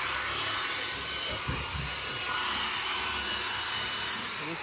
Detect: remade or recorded recorded